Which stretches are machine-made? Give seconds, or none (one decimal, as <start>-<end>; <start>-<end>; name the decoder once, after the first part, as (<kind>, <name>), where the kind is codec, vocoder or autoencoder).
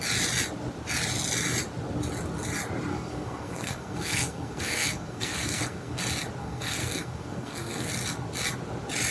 2.9-6.0 (codec, SNAC); 6.4-7.9